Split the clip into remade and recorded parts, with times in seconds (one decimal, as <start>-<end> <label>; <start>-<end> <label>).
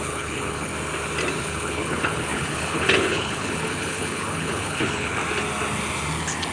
0.0-0.7 remade; 0.7-1.4 recorded; 1.4-5.2 remade; 5.2-6.5 recorded